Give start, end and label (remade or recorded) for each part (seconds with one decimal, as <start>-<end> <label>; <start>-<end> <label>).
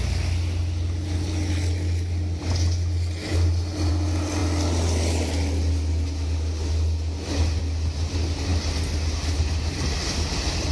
0.0-10.7 recorded